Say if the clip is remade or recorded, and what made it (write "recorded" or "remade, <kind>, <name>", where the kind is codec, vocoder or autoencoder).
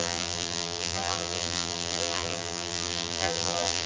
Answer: remade, vocoder, BigVGAN v2